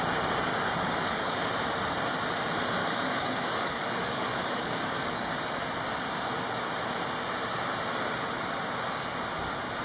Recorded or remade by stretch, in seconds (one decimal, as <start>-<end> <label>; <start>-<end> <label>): 0.0-0.5 recorded; 0.5-1.4 remade; 1.4-2.8 recorded; 2.8-5.5 remade; 5.5-9.8 recorded